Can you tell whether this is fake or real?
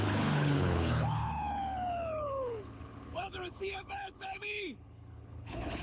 fake